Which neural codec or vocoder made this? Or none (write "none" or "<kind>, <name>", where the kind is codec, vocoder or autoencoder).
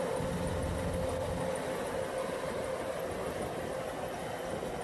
none